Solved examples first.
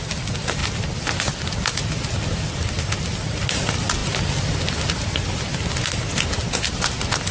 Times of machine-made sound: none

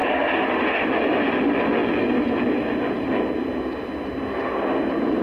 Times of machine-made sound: 0.0-1.8 (vocoder, BigVGAN v2)

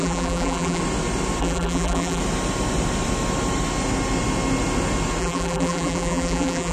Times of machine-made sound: 0.0-0.8 (vocoder, BigVGAN v2); 1.4-2.2; 5.2-6.7

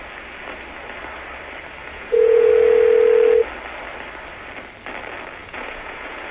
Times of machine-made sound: 1.8-2.5 (vocoder, Vocos); 5.4-6.3

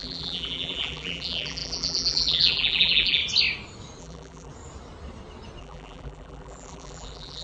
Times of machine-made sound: 0.0-3.2 (vocoder, BigVGAN v2); 4.0-4.5; 5.6-7.4